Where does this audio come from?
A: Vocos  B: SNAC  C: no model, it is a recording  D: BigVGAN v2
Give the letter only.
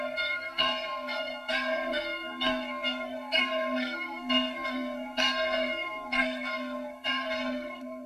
B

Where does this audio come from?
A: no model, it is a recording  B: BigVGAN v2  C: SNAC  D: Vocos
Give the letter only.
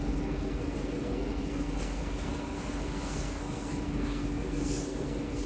C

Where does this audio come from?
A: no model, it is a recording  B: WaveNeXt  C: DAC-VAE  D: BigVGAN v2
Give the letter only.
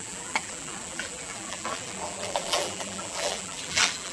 D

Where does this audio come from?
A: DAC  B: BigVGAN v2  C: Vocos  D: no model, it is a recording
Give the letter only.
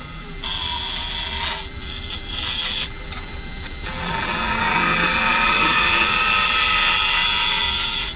B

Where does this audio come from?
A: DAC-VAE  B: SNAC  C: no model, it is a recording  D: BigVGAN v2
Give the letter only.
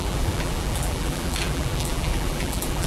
D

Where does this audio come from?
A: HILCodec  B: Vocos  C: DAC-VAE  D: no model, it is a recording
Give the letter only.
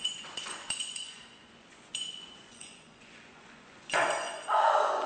B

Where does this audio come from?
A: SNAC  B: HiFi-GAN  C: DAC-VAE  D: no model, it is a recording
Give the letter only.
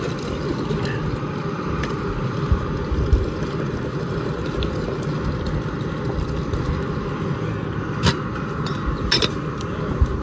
D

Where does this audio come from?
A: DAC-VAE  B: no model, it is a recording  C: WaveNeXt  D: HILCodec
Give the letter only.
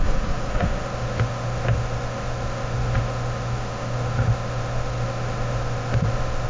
A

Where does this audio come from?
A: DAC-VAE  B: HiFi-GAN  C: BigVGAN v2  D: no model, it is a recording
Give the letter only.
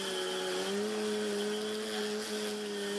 D